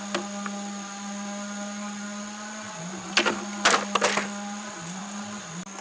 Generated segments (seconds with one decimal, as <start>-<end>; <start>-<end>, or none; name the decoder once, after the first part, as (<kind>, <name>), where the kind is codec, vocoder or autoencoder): none